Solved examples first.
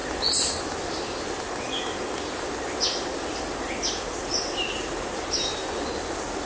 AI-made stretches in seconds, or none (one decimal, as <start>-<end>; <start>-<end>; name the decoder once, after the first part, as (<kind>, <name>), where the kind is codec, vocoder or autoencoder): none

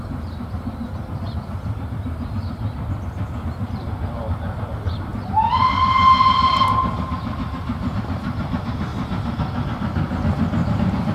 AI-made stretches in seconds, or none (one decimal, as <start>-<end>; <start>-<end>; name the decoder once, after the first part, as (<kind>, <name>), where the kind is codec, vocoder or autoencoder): 0.0-5.1 (vocoder, BigVGAN v2); 7.2-8.9; 10.7-11.1

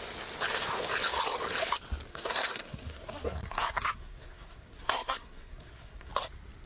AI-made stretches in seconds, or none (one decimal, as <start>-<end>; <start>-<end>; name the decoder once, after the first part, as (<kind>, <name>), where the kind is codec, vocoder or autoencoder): 2.1-6.1 (codec, SNAC)

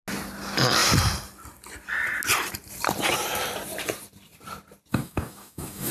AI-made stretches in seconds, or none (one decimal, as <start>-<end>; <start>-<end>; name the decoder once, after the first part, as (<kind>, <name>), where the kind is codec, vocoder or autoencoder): 4.9-5.9 (codec, DAC)